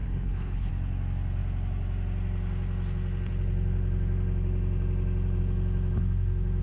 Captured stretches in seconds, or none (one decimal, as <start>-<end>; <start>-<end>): 0.7-6.6